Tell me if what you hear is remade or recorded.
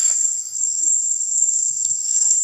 remade